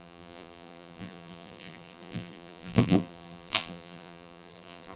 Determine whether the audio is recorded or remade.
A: remade